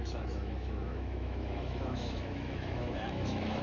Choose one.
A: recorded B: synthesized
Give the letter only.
B